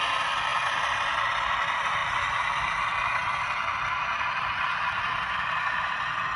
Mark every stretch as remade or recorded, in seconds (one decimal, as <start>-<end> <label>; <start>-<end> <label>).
0.0-0.5 recorded; 0.5-1.5 remade; 1.5-2.0 recorded; 2.0-2.7 remade; 2.7-3.2 recorded; 3.2-5.9 remade; 5.9-6.4 recorded